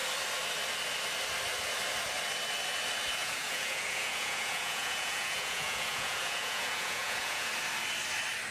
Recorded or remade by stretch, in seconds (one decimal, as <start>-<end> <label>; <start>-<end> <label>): 0.0-3.2 recorded; 3.2-7.5 remade; 7.5-8.5 recorded